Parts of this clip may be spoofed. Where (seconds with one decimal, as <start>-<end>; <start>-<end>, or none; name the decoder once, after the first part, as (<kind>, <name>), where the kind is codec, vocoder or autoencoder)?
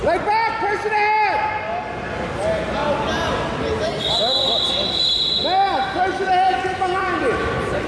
none